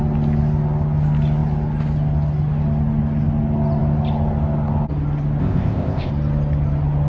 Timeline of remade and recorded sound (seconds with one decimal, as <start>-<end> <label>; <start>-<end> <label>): 0.0-5.4 recorded; 5.4-6.1 remade; 6.1-7.1 recorded